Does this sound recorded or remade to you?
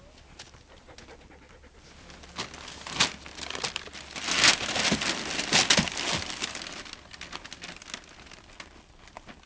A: recorded